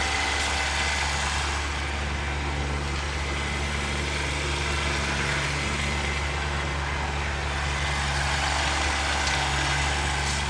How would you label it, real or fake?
real